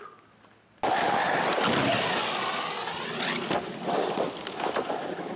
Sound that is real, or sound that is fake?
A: real